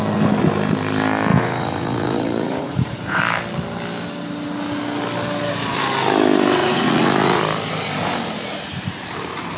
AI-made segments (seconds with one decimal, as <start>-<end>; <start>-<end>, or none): 1.3-3.2; 6.6-7.4